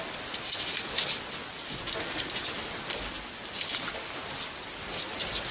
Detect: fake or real real